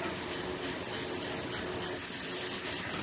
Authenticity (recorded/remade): recorded